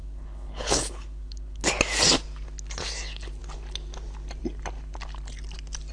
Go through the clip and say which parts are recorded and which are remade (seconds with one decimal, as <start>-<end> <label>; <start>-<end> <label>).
0.0-1.6 remade; 1.6-5.9 recorded